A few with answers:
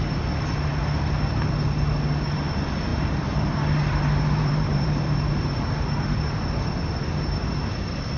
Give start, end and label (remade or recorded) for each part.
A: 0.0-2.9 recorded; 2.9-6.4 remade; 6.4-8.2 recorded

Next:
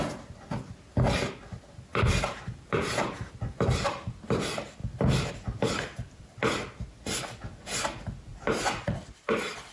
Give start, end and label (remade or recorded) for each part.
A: 0.0-1.9 recorded; 1.9-3.9 remade; 3.9-9.7 recorded

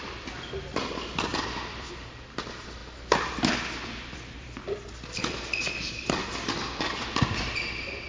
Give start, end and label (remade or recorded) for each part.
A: 0.0-8.1 remade

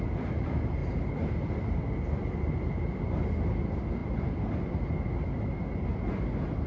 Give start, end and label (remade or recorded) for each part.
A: 0.0-6.7 recorded

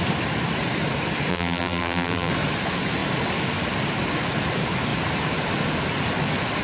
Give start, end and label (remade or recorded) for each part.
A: 0.0-1.3 recorded; 1.3-2.3 remade; 2.3-6.6 recorded

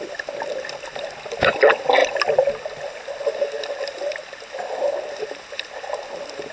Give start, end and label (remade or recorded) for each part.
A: 0.0-6.5 recorded

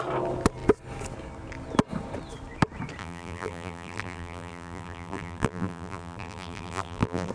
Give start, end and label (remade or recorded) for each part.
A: 0.0-3.0 recorded; 3.0-7.3 remade

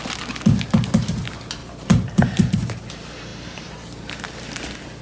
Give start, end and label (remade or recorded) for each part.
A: 0.0-1.6 recorded; 1.6-2.9 remade; 2.9-3.3 recorded; 3.3-4.6 remade; 4.6-5.0 recorded